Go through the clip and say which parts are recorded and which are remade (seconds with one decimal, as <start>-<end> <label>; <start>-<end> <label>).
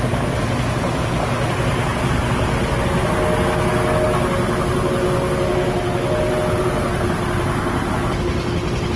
0.0-9.0 recorded